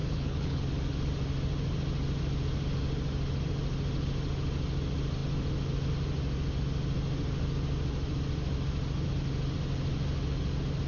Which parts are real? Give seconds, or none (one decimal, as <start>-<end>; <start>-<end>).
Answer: 0.6-10.9